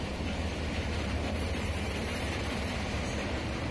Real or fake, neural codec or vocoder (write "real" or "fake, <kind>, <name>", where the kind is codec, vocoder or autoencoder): fake, vocoder, BigVGAN v2